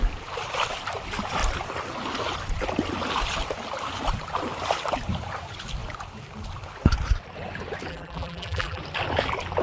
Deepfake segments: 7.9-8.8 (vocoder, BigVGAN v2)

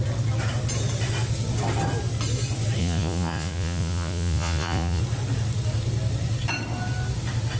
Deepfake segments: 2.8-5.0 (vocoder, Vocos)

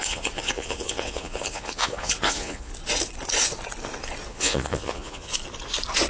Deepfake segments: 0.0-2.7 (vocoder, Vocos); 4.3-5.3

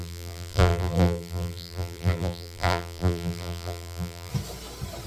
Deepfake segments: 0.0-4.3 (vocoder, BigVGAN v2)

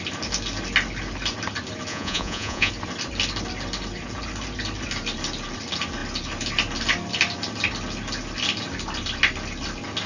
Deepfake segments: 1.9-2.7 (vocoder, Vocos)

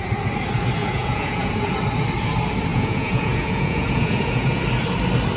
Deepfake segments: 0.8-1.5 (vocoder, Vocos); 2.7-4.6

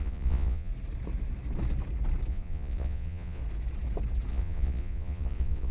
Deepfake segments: 0.0-0.7 (vocoder, Vocos); 2.3-3.4; 4.3-5.7

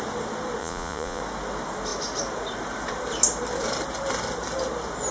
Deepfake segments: 0.6-1.2 (vocoder, Vocos)